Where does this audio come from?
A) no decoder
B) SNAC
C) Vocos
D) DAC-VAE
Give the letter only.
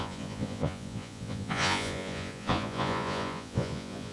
C